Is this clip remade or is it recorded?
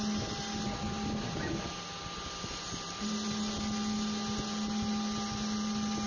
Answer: recorded